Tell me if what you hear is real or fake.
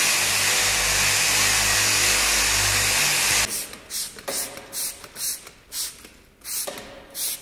real